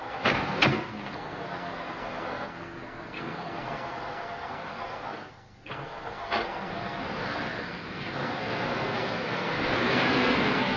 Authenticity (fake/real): fake